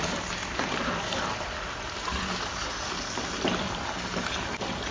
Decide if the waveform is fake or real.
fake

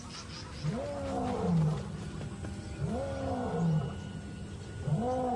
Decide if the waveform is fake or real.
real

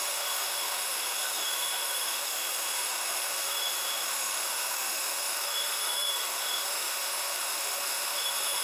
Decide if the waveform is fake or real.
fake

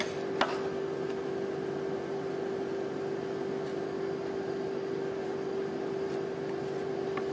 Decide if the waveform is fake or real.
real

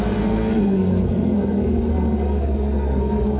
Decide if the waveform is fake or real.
fake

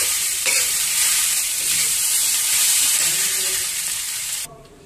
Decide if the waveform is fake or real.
fake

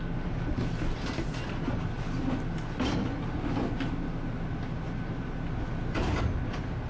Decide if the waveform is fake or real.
real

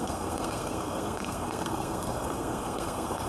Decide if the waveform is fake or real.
fake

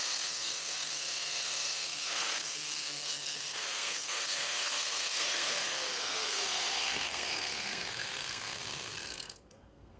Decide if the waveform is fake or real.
fake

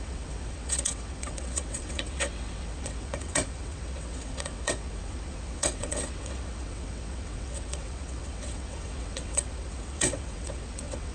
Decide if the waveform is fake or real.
fake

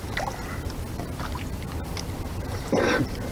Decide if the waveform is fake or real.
real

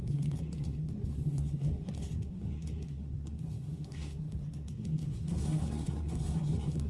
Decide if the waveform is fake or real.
fake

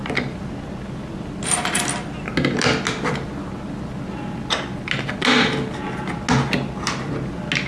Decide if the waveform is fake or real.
real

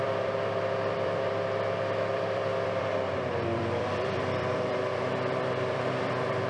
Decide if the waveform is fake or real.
fake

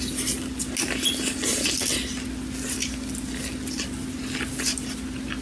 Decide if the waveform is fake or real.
real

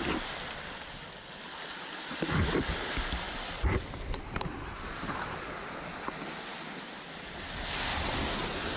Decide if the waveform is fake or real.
real